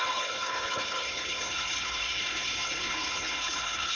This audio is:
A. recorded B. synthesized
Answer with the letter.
B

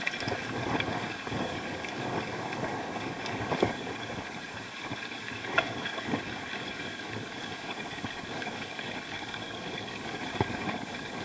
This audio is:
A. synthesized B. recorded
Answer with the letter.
A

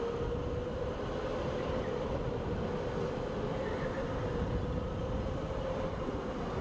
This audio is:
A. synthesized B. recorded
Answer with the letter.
B